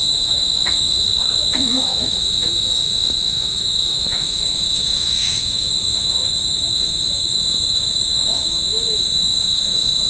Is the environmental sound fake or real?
fake